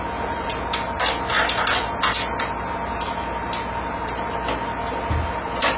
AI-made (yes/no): no